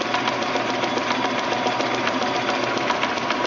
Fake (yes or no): no